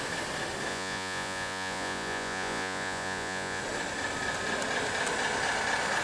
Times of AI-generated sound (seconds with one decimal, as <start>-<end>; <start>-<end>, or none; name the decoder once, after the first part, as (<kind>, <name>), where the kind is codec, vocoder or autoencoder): 0.7-3.6 (vocoder, Vocos)